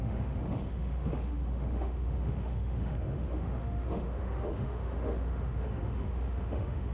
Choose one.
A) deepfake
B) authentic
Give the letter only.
A